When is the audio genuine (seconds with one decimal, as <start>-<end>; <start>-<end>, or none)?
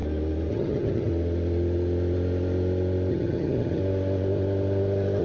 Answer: 0.0-0.5; 1.1-3.1; 3.8-5.2